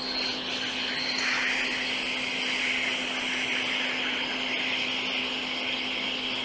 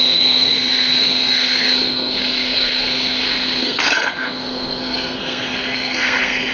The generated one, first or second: second